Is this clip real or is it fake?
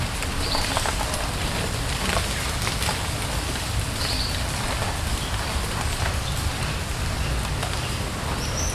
real